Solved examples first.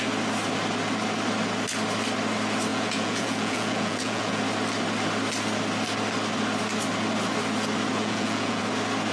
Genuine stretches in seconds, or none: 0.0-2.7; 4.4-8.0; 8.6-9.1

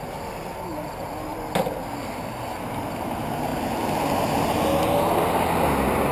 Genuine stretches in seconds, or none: 0.0-6.1